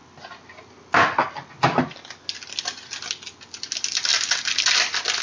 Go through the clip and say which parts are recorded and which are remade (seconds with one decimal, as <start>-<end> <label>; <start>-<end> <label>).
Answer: 0.0-5.2 recorded